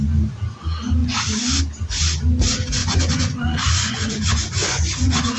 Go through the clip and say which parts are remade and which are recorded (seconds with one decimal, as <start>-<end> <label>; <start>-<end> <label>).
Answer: 0.0-2.8 recorded; 2.8-5.4 remade